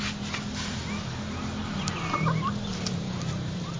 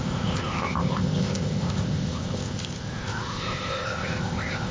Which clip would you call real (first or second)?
first